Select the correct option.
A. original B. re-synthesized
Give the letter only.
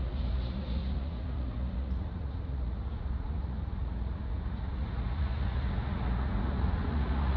B